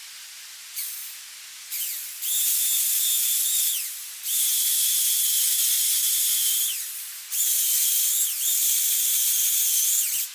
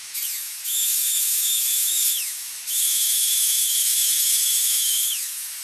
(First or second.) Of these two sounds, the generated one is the second